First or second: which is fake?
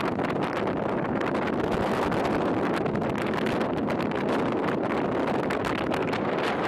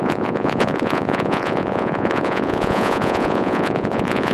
second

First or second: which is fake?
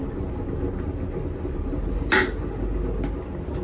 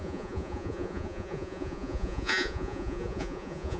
second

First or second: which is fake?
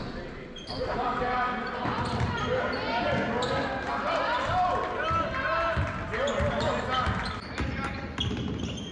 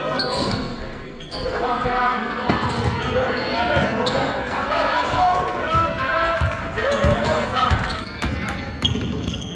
second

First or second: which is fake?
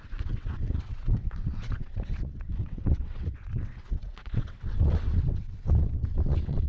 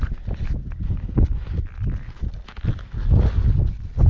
first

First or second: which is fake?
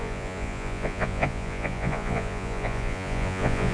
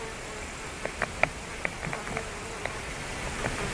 first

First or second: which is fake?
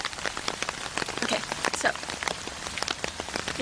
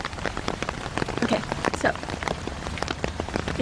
second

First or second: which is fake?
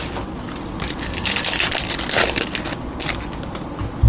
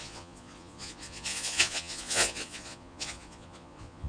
second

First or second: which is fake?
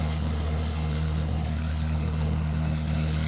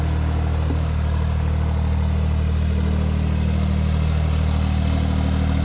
first